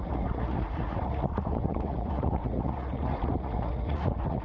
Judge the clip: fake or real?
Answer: fake